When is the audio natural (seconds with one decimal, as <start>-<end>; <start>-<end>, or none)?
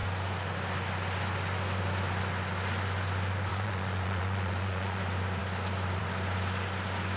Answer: 0.0-3.5; 5.0-7.2